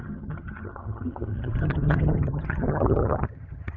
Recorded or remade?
remade